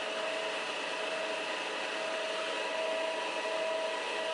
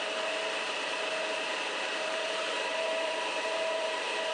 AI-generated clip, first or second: second